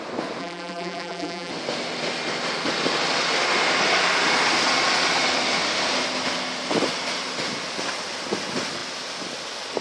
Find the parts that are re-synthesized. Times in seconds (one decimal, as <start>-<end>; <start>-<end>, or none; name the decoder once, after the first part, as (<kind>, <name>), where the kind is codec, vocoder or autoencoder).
0.4-1.5 (vocoder, BigVGAN v2)

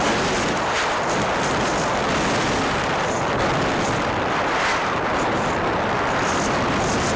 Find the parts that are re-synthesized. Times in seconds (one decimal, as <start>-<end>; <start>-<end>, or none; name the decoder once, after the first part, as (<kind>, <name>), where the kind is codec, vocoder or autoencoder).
0.0-7.2 (vocoder, BigVGAN v2)

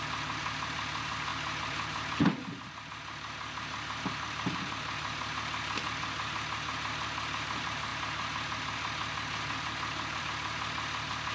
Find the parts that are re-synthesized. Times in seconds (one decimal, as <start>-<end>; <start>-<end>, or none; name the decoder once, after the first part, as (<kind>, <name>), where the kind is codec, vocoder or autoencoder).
1.3-2.8 (vocoder, BigVGAN v2)

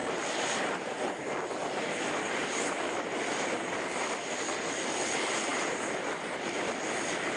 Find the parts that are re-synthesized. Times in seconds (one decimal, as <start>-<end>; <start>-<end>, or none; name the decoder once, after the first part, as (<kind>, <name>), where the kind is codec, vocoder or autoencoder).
0.0-1.0 (vocoder, BigVGAN v2); 2.4-4.1; 5.5-6.7

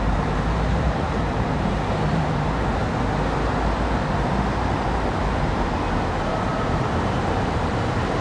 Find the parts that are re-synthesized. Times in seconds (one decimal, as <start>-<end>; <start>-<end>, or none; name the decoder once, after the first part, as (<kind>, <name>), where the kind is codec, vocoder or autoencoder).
0.0-2.8 (vocoder, BigVGAN v2); 6.3-8.2

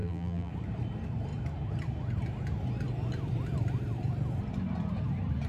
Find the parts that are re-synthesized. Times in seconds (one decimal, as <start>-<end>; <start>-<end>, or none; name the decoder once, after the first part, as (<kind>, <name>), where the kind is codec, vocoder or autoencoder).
0.0-0.5 (vocoder, BigVGAN v2)